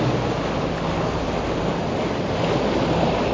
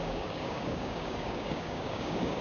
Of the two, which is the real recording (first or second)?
first